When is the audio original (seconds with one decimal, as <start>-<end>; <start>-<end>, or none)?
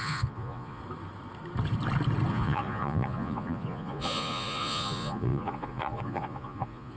0.8-2.3